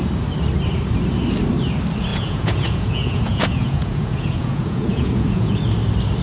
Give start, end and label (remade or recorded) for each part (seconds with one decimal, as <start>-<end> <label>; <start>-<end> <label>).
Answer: 0.0-2.1 recorded; 2.1-5.6 remade; 5.6-6.2 recorded